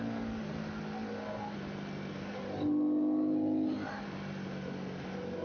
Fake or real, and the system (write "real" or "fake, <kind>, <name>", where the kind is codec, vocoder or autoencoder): real